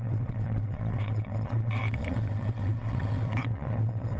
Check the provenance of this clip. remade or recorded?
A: remade